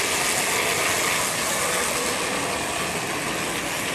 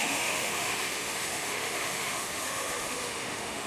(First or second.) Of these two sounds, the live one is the first